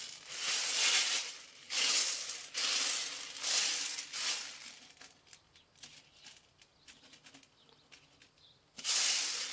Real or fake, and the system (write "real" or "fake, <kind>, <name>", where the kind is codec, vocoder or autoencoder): real